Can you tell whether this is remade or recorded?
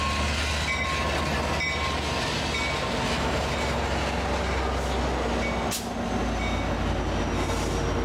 recorded